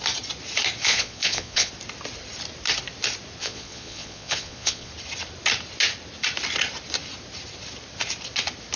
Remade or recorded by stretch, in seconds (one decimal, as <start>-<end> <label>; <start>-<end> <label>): 0.0-0.8 recorded; 0.8-1.7 remade; 1.7-3.4 recorded; 3.4-4.9 remade; 4.9-8.8 recorded